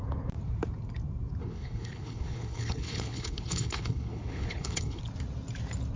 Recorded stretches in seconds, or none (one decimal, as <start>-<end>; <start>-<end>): 0.0-1.4; 5.0-6.0